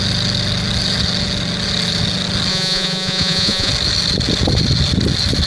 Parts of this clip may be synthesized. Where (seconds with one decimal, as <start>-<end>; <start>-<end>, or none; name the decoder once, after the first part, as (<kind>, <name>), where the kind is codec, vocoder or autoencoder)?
2.5-3.7 (vocoder, Vocos)